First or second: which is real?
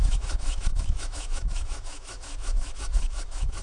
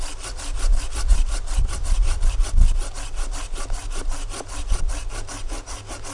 second